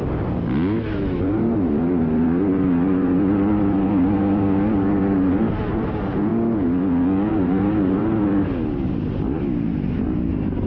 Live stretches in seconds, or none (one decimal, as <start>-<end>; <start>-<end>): 0.0-0.9; 6.3-7.3